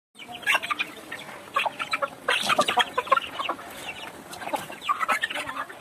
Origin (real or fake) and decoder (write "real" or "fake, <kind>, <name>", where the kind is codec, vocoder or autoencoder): real